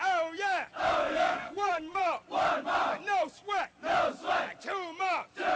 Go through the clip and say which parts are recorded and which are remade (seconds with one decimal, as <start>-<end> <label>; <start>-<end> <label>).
0.0-1.0 recorded; 1.0-2.0 remade; 2.0-5.6 recorded